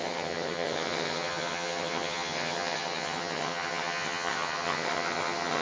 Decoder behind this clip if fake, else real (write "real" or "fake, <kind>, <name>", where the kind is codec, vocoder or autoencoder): fake, vocoder, HiFi-GAN